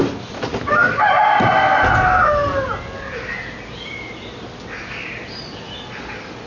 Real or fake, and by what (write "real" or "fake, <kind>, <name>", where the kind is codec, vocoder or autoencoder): real